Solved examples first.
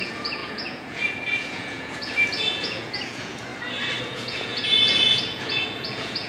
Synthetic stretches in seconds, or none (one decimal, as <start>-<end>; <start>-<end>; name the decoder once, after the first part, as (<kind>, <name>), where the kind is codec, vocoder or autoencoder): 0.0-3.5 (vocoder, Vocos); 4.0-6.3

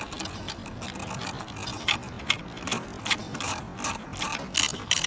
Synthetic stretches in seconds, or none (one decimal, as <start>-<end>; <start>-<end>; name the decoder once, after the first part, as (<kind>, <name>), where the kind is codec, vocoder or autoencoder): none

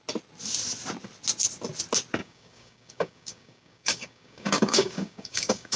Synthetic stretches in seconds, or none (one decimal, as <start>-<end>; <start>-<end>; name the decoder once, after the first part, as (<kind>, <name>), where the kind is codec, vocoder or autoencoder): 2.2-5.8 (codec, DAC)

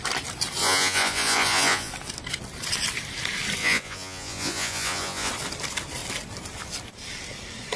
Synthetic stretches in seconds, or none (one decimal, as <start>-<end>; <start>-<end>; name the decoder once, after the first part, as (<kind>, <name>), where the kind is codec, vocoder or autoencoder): 0.6-1.9 (vocoder, Vocos); 3.6-5.3